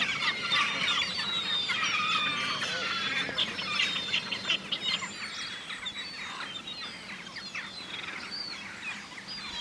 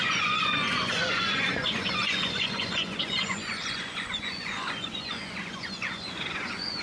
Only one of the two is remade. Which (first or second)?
second